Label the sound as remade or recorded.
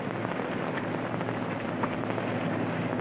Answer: recorded